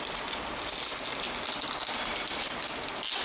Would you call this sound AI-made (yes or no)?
no